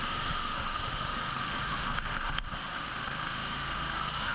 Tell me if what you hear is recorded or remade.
remade